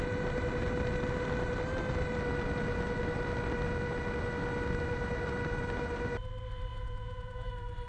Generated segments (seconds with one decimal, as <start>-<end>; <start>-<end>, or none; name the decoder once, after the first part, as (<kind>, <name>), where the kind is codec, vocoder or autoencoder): 6.7-7.5 (vocoder, Vocos)